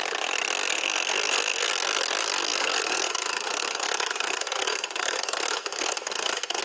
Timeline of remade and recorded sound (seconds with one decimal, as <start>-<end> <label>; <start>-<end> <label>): 0.0-0.7 recorded; 0.7-1.7 remade; 1.7-2.4 recorded; 2.4-6.6 remade